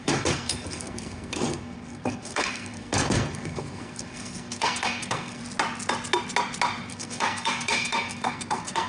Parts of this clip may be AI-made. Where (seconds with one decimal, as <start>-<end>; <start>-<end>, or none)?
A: 0.0-5.4; 6.9-8.9